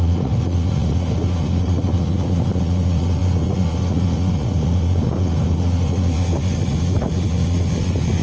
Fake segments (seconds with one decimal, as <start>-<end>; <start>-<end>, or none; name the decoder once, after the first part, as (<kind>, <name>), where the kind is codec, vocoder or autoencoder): 0.0-8.2 (vocoder, Vocos)